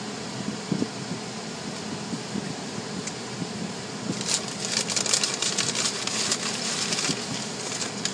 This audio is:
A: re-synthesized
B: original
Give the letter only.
B